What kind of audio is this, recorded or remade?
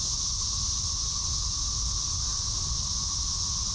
recorded